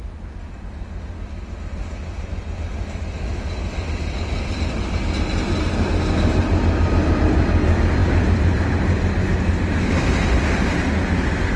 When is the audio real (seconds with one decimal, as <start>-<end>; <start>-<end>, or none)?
0.0-11.6